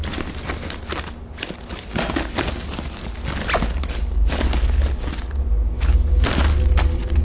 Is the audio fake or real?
real